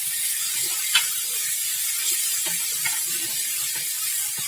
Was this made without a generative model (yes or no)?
no